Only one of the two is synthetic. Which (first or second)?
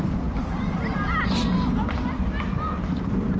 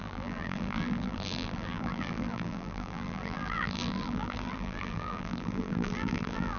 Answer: second